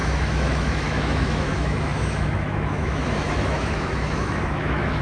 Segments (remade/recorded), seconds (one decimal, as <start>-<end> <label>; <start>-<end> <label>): 0.0-5.0 remade

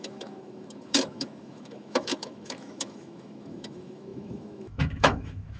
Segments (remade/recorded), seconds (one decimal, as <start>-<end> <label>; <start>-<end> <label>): 0.0-5.6 remade

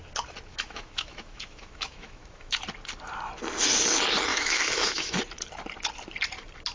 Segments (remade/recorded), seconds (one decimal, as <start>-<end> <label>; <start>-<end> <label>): 0.0-0.5 recorded; 0.5-2.6 remade; 2.6-4.3 recorded; 4.3-5.2 remade; 5.2-6.7 recorded

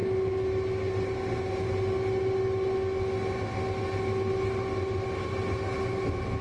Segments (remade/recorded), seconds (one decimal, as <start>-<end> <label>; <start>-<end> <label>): 0.0-6.4 recorded

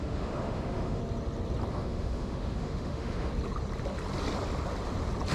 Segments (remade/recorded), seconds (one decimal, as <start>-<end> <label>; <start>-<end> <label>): 0.0-1.0 remade; 1.0-1.7 recorded; 1.7-3.3 remade; 3.3-5.3 recorded

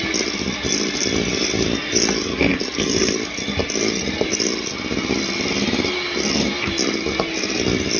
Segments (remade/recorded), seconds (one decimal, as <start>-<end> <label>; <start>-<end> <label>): 0.0-8.0 recorded